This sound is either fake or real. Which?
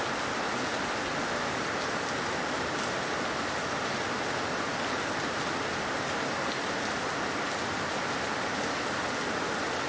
real